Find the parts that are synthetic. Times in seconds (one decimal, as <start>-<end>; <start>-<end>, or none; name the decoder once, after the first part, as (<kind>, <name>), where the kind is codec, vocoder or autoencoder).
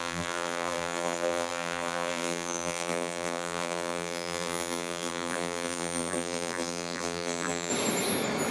0.0-7.7 (vocoder, BigVGAN v2)